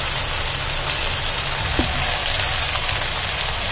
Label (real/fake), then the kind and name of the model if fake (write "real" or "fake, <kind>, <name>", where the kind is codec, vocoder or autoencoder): real